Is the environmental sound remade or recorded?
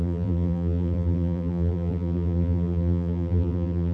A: remade